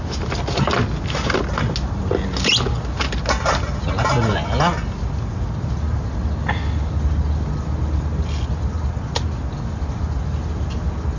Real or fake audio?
real